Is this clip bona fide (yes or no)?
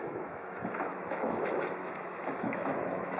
no